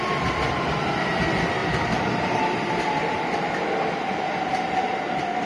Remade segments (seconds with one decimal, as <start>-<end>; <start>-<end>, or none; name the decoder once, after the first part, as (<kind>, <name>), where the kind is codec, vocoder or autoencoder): none